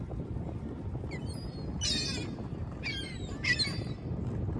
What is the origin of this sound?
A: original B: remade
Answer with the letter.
A